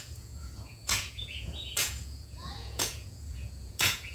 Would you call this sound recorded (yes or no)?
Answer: no